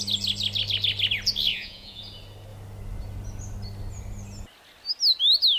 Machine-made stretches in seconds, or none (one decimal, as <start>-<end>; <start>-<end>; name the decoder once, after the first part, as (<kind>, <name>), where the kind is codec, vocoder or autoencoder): 1.5-2.0 (vocoder, Vocos)